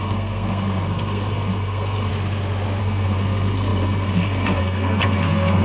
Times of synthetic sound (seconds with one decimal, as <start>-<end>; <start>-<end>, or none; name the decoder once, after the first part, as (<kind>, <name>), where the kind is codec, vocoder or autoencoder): 0.0-2.1 (codec, SNAC); 2.8-5.6